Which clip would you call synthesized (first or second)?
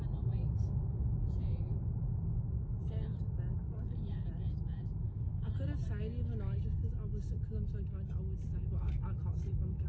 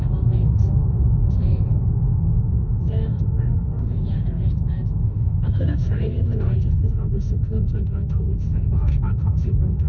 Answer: second